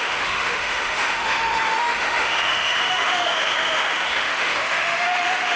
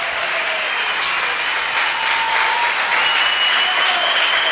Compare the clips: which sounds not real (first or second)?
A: first